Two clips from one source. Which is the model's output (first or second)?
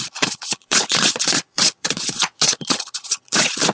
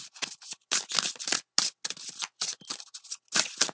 first